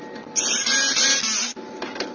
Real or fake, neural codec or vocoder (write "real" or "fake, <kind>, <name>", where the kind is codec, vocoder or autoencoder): real